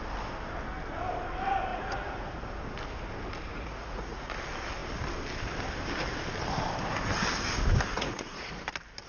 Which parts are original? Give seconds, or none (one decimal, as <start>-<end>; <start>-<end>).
0.0-1.7; 2.5-3.5; 4.3-7.9; 8.5-9.1

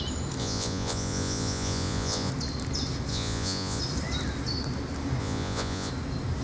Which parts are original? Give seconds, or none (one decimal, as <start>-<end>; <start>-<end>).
0.0-0.4; 2.3-3.1; 3.8-5.2; 5.9-6.4

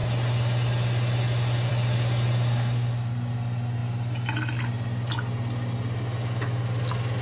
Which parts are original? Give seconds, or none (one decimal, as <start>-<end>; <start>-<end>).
0.0-7.2